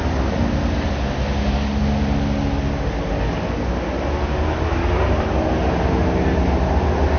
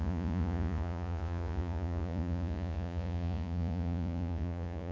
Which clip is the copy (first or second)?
second